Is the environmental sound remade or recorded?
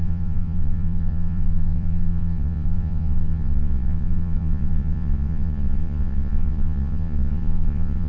remade